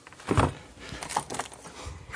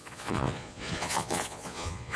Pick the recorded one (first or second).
first